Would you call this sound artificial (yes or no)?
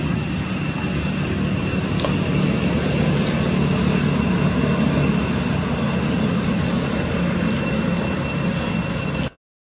no